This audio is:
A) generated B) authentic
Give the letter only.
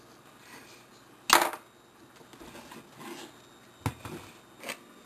B